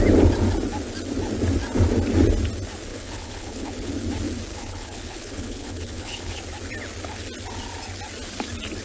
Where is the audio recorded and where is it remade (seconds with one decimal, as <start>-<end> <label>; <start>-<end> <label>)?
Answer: 0.0-2.9 recorded; 2.9-3.9 remade; 3.9-4.5 recorded; 4.5-6.3 remade; 6.3-8.8 recorded